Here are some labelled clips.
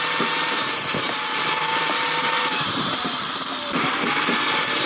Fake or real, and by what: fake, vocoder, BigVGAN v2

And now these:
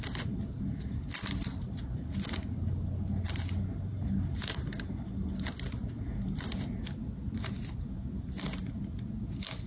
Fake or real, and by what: real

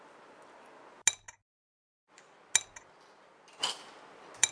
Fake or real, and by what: real